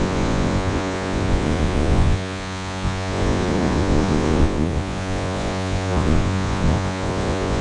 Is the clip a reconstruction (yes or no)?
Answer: yes